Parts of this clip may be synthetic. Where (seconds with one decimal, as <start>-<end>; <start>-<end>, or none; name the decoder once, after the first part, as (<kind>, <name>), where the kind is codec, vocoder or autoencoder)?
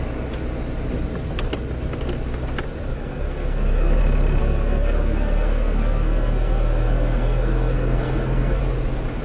2.9-4.0 (codec, SNAC); 4.4-8.6